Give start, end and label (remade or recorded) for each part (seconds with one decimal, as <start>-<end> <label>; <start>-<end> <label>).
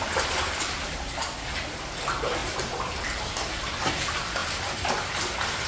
0.0-5.7 recorded